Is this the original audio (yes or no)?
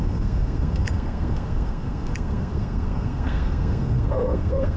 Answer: no